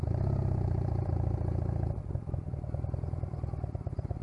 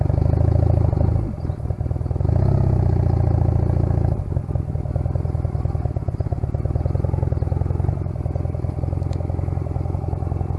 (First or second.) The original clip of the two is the second